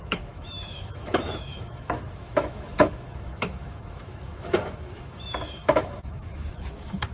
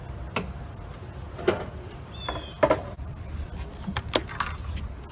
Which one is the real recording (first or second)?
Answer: second